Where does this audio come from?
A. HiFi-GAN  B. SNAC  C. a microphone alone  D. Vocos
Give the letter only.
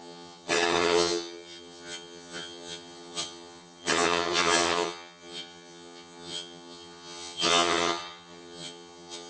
A